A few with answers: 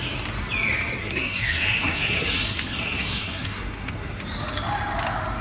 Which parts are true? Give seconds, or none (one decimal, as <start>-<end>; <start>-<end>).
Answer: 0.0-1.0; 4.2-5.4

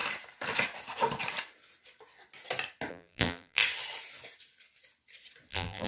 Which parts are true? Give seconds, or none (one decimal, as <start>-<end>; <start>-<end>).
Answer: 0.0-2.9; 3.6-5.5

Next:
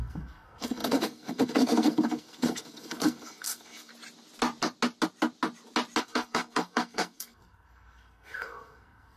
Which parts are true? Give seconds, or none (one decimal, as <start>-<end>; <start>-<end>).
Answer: 3.9-6.0

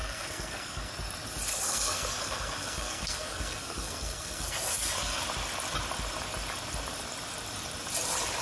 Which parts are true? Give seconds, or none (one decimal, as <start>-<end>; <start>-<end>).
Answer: 0.9-1.5; 5.2-8.4

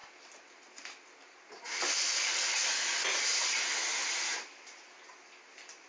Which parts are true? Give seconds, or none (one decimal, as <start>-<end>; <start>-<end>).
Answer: 0.0-5.9